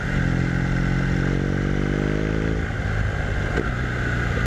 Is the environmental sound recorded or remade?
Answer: recorded